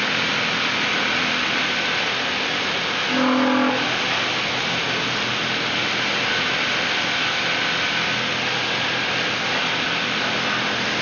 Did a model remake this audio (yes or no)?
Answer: no